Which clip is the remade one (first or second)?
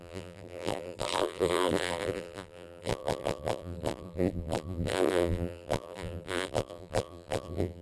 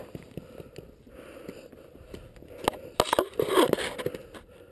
first